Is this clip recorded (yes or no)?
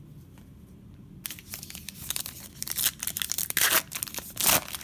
yes